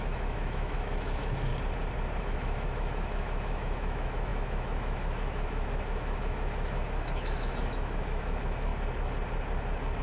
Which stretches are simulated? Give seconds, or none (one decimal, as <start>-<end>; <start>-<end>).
0.0-1.5; 2.2-8.7